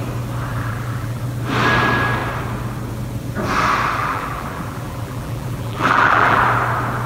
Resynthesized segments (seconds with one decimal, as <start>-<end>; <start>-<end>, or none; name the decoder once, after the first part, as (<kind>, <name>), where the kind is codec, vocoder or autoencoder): 0.5-1.2 (vocoder, BigVGAN v2); 4.0-6.4